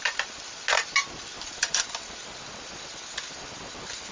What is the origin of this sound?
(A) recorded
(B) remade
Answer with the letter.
A